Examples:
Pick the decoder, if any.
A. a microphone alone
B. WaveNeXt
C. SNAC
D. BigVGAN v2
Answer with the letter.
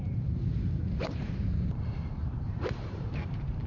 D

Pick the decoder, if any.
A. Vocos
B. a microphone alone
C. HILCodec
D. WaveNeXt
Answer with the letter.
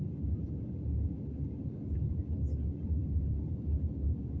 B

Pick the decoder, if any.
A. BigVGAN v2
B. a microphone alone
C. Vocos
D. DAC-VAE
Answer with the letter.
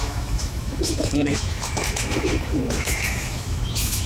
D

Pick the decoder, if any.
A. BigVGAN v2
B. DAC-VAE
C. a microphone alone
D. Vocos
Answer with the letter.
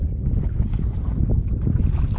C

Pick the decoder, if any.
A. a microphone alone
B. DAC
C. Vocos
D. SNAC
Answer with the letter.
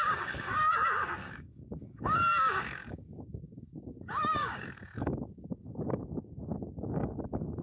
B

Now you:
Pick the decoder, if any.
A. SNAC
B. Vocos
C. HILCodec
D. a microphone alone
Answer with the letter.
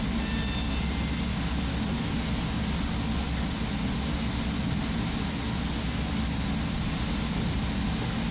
D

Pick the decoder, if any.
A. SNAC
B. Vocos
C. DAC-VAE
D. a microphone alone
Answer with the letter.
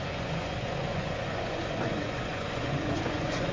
B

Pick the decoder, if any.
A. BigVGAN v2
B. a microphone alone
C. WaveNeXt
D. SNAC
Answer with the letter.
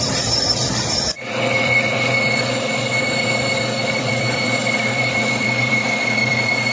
A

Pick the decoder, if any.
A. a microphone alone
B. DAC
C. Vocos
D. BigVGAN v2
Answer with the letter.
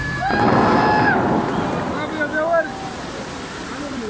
A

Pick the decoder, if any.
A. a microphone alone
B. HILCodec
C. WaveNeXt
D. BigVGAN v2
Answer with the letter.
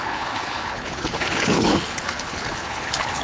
B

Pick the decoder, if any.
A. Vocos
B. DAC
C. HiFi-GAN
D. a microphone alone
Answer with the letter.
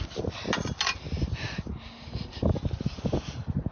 D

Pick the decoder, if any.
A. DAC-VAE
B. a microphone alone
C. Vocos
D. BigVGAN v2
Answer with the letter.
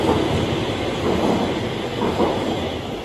B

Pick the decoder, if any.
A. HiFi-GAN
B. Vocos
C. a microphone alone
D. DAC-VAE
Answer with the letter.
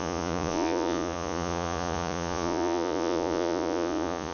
B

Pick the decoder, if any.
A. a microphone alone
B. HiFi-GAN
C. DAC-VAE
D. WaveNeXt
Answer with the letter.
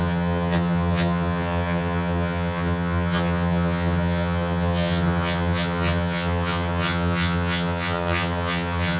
B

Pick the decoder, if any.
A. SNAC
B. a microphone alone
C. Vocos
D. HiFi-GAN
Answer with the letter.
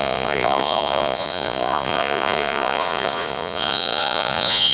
C